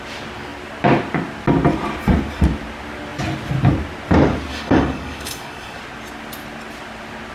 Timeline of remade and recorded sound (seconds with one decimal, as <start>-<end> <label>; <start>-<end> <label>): 0.0-4.5 recorded; 4.5-5.8 remade; 5.8-7.3 recorded